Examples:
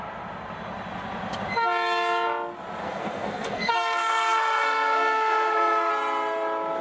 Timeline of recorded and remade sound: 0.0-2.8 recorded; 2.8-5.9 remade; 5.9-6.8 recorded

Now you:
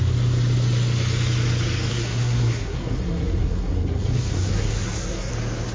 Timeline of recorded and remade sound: 0.0-1.9 recorded; 1.9-5.3 remade; 5.3-5.7 recorded

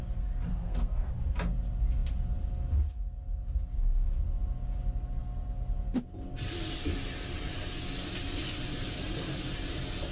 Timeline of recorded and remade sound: 0.0-0.5 recorded; 0.5-1.1 remade; 1.1-10.1 recorded

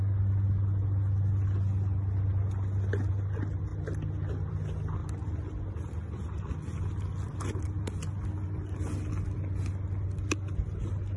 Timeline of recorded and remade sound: 0.0-11.2 recorded